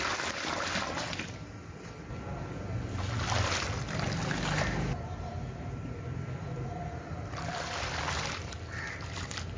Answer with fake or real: real